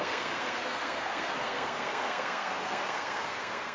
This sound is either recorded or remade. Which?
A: remade